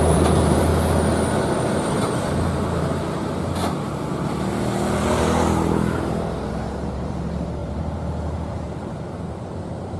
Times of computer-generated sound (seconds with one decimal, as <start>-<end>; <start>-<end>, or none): 0.0-0.7; 1.9-2.9; 6.5-10.0